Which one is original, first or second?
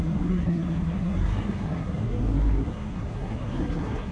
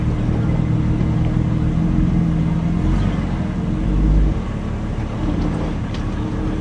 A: second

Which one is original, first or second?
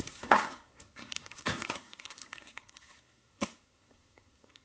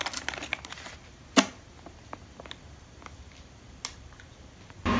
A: second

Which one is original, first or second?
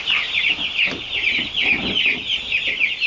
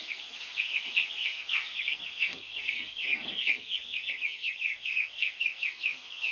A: first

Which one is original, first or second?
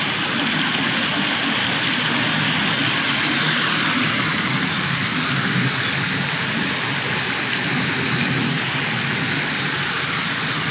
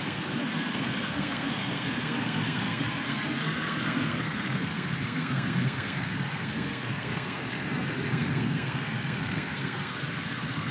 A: first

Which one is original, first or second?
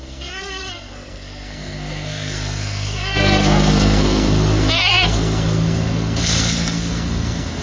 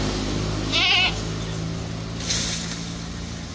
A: second